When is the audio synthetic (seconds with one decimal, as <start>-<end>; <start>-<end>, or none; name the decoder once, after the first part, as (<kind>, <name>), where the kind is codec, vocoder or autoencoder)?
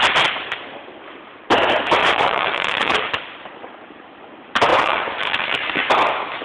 2.0-3.0 (vocoder, Vocos); 4.7-5.9